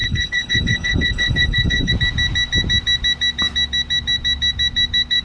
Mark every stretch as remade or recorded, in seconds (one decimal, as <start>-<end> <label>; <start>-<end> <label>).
0.0-1.9 remade; 1.9-5.2 recorded